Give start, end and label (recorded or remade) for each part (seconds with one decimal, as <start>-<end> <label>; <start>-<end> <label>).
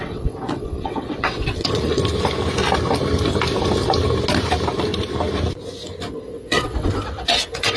0.0-2.0 remade; 2.0-6.1 recorded; 6.1-7.8 remade